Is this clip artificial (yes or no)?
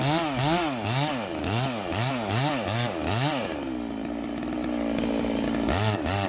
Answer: no